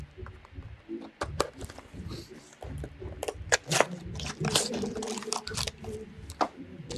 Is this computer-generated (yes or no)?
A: yes